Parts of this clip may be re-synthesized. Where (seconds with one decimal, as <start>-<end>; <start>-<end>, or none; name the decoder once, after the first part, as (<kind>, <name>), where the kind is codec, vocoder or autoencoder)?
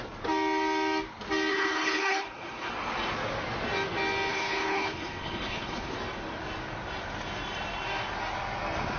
1.5-2.7 (codec, HILCodec); 4.3-5.9